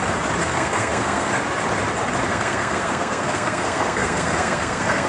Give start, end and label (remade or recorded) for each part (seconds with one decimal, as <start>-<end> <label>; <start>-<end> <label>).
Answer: 0.0-0.4 recorded; 0.4-1.3 remade; 1.3-2.3 recorded; 2.3-5.1 remade